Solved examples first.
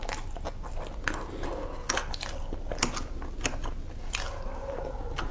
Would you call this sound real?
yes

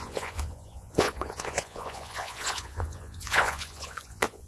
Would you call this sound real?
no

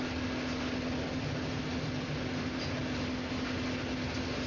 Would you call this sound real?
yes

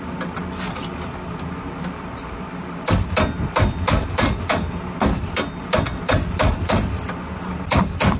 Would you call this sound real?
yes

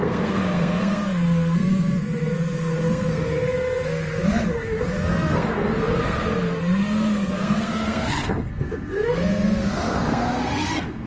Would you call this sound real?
no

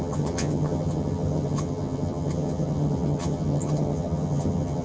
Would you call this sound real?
no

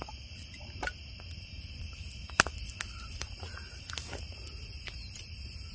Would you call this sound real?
yes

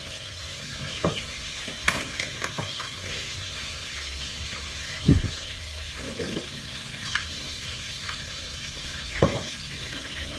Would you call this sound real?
no